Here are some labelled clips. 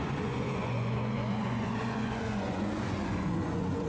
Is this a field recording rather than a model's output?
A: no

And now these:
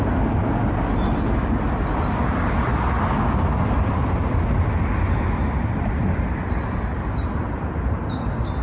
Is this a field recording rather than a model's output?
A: yes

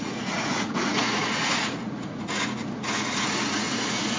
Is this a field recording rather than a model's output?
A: no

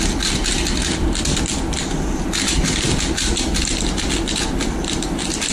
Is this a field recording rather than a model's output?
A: yes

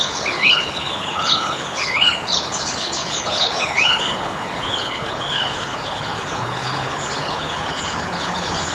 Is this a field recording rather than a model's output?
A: no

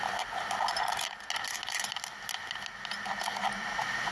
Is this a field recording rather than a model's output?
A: yes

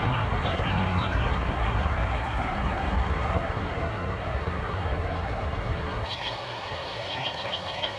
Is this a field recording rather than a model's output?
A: no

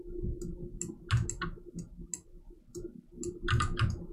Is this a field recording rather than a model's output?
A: yes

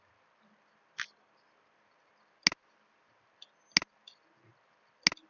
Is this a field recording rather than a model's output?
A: yes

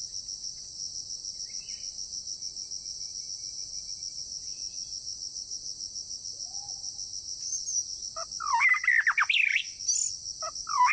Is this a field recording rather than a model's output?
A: yes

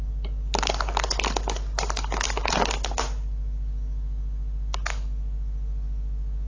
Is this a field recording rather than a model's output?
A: yes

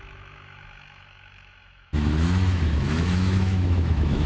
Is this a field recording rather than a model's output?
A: no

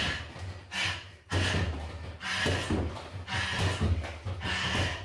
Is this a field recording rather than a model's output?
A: yes